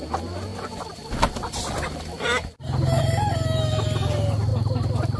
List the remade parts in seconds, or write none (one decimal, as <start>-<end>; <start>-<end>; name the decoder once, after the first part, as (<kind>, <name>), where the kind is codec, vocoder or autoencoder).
none